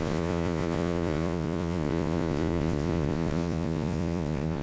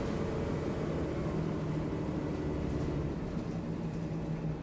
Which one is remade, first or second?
first